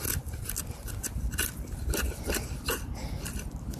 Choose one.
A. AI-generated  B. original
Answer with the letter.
B